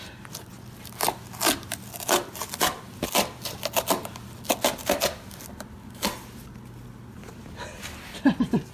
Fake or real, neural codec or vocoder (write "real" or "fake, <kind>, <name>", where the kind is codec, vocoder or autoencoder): real